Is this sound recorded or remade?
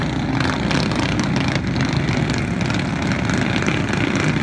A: recorded